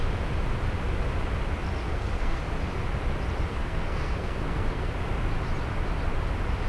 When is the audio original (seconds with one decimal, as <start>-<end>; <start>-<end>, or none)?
0.0-1.9; 2.4-3.5; 4.9-6.7